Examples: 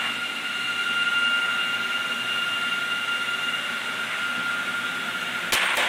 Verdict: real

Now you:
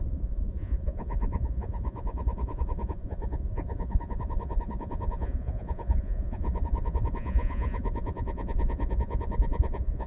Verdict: fake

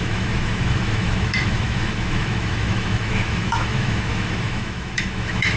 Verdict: fake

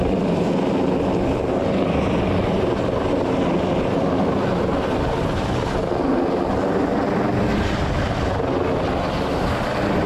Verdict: real